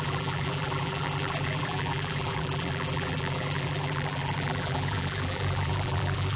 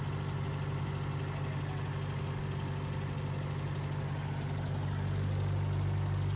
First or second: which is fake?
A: first